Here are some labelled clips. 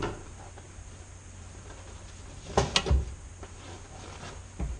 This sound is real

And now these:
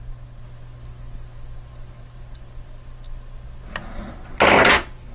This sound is real